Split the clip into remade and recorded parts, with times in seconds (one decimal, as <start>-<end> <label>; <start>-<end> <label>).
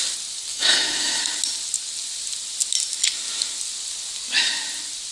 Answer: 0.0-0.5 recorded; 0.5-1.2 remade; 1.2-5.1 recorded